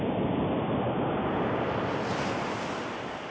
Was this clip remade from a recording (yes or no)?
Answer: no